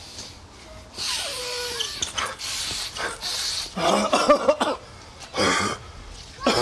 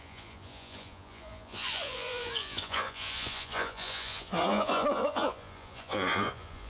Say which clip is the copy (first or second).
second